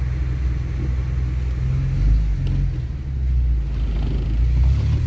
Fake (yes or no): no